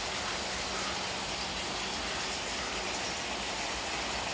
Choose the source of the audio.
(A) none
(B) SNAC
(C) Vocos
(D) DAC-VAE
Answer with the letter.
A